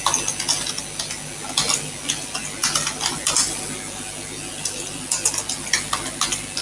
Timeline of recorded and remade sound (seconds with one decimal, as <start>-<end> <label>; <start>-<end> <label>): 0.0-6.6 recorded